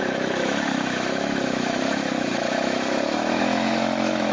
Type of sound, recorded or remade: remade